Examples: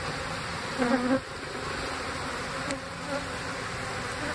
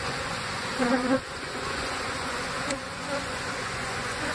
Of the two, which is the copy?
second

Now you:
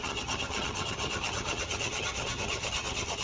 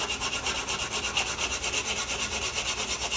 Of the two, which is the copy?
first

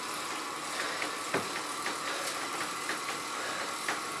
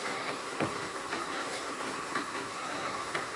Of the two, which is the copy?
second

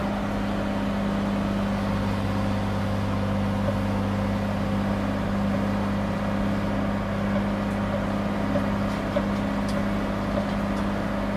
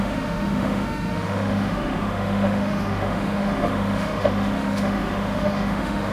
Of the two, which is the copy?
second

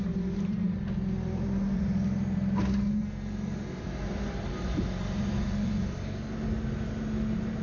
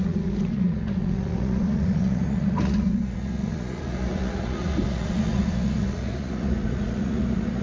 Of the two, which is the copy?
second